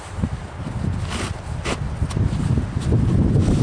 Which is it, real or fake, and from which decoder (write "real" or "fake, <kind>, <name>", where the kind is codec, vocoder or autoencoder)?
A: real